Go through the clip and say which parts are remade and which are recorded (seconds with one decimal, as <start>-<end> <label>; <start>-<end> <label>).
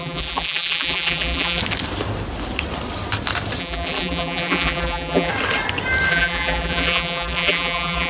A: 0.0-1.6 remade; 1.6-3.6 recorded; 3.6-5.3 remade; 5.3-6.1 recorded; 6.1-8.1 remade